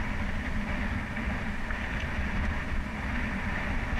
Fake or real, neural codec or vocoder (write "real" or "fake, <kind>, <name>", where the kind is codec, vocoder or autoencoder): real